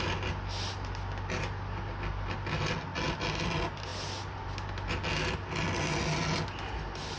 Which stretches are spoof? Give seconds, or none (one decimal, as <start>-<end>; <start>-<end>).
none